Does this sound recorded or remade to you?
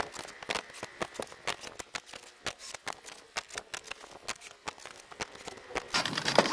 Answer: recorded